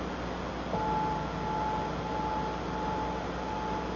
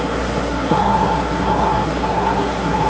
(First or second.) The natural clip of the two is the first